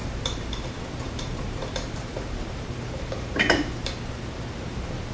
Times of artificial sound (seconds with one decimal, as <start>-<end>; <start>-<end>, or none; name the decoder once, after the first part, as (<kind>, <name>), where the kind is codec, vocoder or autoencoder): 0.0-5.1 (vocoder, BigVGAN v2)